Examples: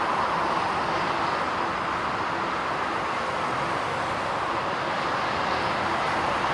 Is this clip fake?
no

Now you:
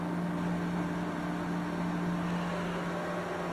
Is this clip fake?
no